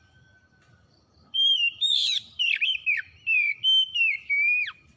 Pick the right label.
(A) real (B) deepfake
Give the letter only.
B